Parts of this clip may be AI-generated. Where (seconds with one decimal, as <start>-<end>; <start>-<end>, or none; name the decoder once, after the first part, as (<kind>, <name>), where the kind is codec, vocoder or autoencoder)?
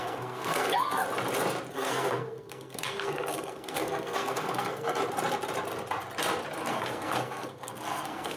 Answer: 0.0-1.0 (codec, SNAC); 1.7-5.0; 6.7-8.4